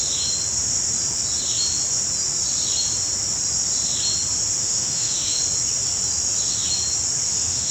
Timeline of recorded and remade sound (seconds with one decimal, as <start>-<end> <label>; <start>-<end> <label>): 0.0-4.6 recorded; 4.6-5.4 remade; 5.4-7.3 recorded; 7.3-7.7 remade